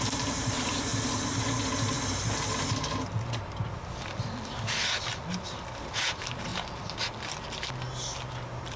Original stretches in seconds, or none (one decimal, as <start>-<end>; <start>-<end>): 0.9-5.8; 6.5-8.2